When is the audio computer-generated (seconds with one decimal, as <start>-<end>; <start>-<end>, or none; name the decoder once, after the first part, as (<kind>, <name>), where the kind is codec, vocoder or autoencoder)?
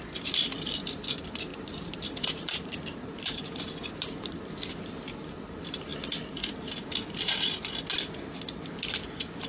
1.5-4.4 (vocoder, BigVGAN v2)